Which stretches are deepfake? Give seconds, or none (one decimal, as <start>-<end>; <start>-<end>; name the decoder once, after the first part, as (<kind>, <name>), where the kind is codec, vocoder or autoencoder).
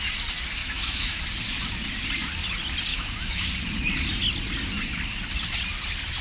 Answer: 0.6-1.2 (autoencoder, DAC-VAE); 2.9-3.5